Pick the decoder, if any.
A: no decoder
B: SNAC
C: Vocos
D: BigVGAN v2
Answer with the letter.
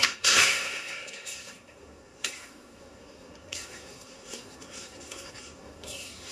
B